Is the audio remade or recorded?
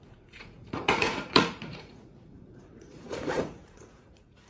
remade